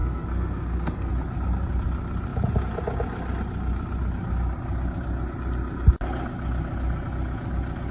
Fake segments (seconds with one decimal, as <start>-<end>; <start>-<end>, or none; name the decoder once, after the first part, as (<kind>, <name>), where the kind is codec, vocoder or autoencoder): 0.0-1.1 (codec, SNAC)